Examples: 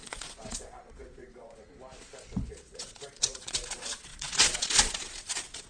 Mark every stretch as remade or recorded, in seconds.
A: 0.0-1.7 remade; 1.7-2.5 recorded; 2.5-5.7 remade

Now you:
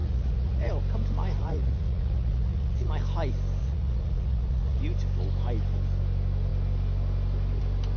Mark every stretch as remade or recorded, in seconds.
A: 0.0-0.7 remade; 0.7-1.4 recorded; 1.4-2.9 remade; 2.9-3.6 recorded; 3.6-4.8 remade; 4.8-8.0 recorded

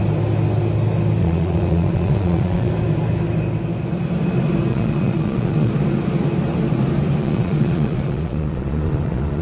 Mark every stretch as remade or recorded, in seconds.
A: 0.0-1.2 recorded; 1.2-2.7 remade; 2.7-4.7 recorded; 4.7-5.7 remade; 5.7-7.2 recorded; 7.2-9.4 remade

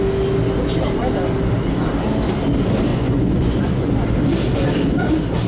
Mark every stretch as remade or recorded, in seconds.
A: 0.0-2.9 recorded; 2.9-3.9 remade; 3.9-5.5 recorded

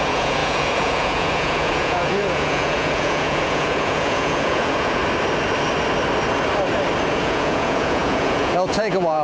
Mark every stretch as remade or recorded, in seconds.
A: 0.0-5.0 remade; 5.0-7.1 recorded; 7.1-9.2 remade

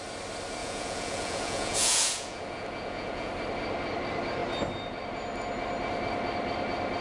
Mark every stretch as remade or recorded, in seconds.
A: 0.0-0.6 recorded; 0.6-3.3 remade; 3.3-7.0 recorded

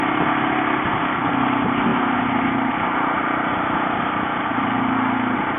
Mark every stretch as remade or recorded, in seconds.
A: 0.0-5.6 recorded

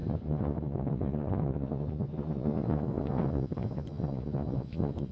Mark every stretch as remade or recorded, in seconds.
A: 0.0-5.1 remade